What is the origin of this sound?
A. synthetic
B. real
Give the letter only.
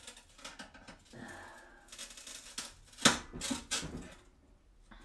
B